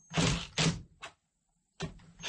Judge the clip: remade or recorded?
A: recorded